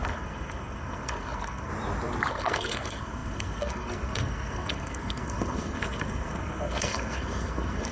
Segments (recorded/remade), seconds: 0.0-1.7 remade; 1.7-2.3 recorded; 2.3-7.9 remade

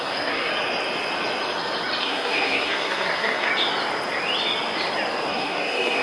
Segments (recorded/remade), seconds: 0.0-0.5 remade; 0.5-2.0 recorded; 2.0-3.5 remade; 3.5-5.3 recorded; 5.3-6.0 remade

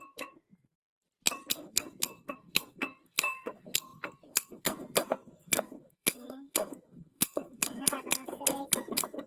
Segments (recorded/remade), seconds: 0.0-0.8 remade; 0.8-1.5 recorded; 1.5-9.3 remade

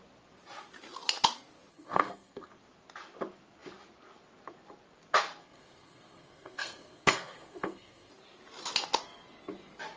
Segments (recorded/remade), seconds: 0.0-1.7 recorded; 1.7-2.5 remade; 2.5-5.4 recorded; 5.4-8.1 remade; 8.1-10.0 recorded

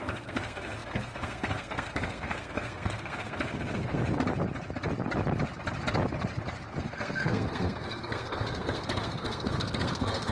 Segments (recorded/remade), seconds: 0.0-4.0 remade; 4.0-6.8 recorded; 6.8-10.3 remade

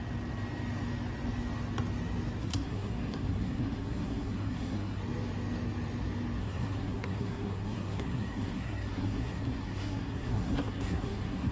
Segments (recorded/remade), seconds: 0.0-2.4 recorded; 2.4-5.0 remade; 5.0-6.4 recorded; 6.4-11.5 remade

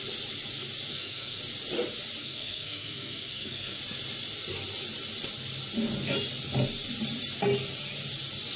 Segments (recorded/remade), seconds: 0.0-0.9 recorded; 0.9-1.4 remade; 1.4-2.2 recorded; 2.2-3.8 remade; 3.8-8.6 recorded

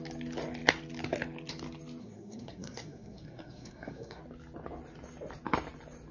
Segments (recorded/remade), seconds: 0.0-2.0 recorded; 2.0-4.2 remade; 4.2-6.1 recorded